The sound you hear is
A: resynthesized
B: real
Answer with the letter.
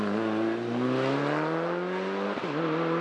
B